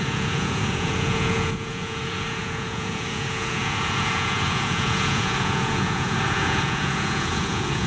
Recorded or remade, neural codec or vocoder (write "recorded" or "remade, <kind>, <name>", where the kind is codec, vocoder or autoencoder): remade, vocoder, Vocos